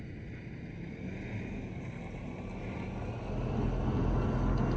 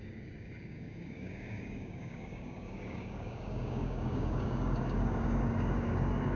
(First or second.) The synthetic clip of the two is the second